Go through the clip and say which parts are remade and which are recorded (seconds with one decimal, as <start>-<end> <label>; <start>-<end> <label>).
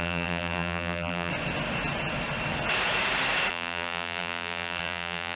0.0-1.3 remade; 1.3-3.5 recorded; 3.5-5.3 remade